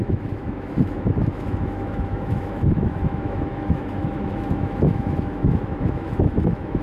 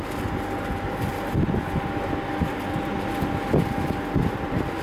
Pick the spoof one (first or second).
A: first